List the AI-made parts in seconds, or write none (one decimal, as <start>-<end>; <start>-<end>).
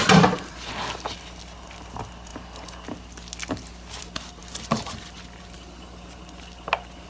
none